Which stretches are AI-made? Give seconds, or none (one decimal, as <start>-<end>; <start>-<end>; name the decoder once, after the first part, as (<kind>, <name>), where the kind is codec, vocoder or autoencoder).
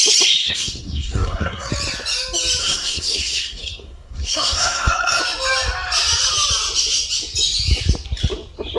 0.4-1.7 (codec, SNAC); 2.6-5.2